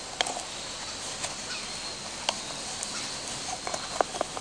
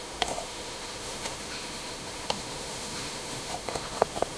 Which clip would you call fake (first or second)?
second